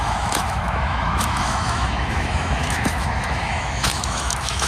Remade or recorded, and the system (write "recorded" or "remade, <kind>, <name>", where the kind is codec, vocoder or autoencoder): remade, autoencoder, DAC-VAE